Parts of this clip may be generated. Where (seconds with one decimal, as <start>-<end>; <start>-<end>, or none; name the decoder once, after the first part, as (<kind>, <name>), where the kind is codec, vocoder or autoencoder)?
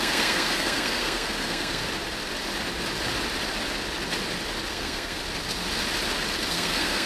0.0-1.8 (codec, SNAC); 4.7-5.2; 6.5-7.1